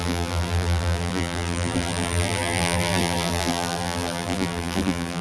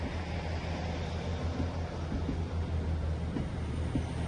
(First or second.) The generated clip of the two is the first